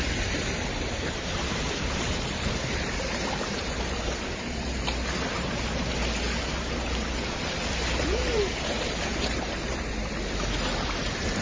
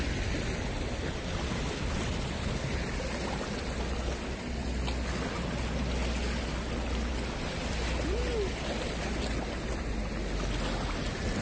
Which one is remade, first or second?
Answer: first